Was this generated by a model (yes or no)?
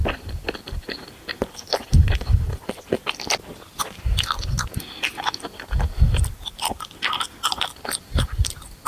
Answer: no